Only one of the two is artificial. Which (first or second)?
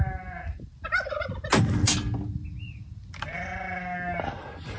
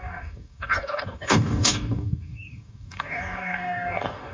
second